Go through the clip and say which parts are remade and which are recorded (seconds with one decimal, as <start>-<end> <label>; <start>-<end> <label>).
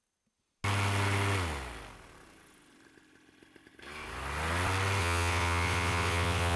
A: 0.0-5.0 recorded; 5.0-6.6 remade